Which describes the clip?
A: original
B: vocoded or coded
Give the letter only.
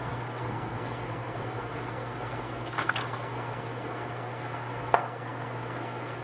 B